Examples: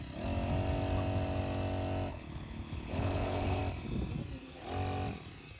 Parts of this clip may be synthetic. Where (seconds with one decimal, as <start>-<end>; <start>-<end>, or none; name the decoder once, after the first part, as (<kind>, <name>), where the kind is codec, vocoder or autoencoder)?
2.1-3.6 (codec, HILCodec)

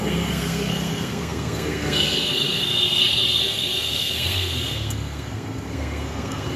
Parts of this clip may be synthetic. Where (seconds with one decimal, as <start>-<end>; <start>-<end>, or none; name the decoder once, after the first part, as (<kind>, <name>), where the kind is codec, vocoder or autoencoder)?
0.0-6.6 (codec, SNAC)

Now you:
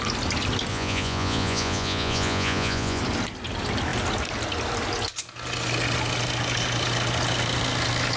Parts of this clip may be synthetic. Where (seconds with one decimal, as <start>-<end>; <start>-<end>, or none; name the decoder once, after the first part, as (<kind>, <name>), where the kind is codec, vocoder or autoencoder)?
0.7-3.0 (vocoder, Vocos)

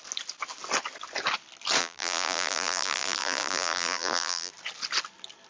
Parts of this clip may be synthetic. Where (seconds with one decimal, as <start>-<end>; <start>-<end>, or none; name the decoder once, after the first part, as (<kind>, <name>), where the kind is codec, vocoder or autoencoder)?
1.8-4.5 (vocoder, BigVGAN v2)

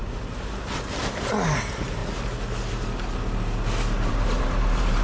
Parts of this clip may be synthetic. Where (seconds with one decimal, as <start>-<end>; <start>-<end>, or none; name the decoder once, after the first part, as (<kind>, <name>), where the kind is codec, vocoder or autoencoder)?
1.0-2.0 (vocoder, BigVGAN v2); 4.1-5.0

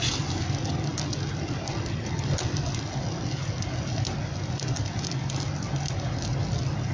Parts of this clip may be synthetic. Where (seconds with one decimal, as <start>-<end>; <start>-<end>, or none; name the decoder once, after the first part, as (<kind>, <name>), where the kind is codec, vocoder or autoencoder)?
none

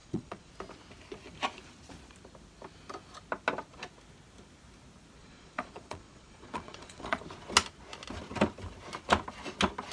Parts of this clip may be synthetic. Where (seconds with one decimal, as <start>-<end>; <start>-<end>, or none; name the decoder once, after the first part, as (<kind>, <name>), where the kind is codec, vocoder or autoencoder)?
0.0-0.5 (vocoder, Vocos); 5.2-7.2